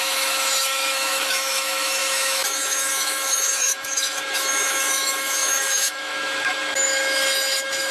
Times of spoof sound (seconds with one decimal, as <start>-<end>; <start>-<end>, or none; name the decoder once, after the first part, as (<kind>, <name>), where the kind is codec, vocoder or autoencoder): 0.0-7.9 (autoencoder, DAC-VAE)